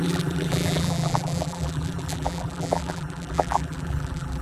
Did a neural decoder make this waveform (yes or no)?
yes